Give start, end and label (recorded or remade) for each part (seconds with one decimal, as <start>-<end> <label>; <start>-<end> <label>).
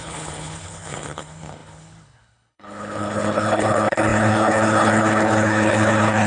0.0-6.3 remade